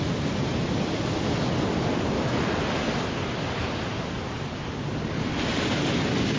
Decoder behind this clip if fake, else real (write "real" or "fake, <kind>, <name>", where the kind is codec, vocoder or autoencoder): real